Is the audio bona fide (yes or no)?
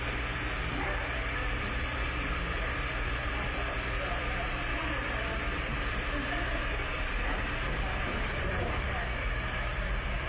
no